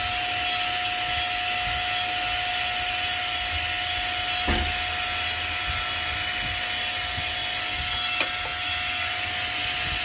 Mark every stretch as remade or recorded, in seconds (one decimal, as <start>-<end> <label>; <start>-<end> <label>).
0.0-10.0 recorded